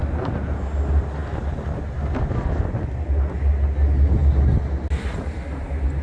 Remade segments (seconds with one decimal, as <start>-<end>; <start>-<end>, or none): none